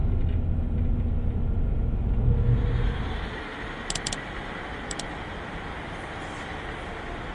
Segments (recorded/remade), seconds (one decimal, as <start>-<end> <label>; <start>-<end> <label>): 0.0-7.3 recorded